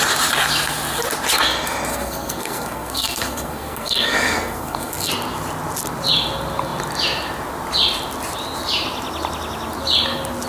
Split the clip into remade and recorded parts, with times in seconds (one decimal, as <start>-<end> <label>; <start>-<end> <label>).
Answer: 0.0-1.9 recorded; 1.9-5.1 remade; 5.1-10.5 recorded